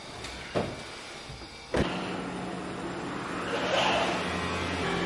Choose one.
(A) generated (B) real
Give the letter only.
B